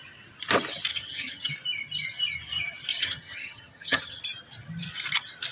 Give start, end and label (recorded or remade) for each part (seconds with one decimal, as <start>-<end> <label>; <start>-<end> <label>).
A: 0.0-0.9 recorded; 0.9-1.5 remade; 1.5-2.9 recorded; 2.9-4.2 remade; 4.2-5.5 recorded